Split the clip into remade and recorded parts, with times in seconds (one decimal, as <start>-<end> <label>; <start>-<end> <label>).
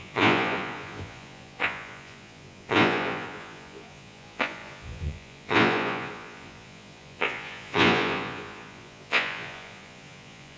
0.0-10.6 remade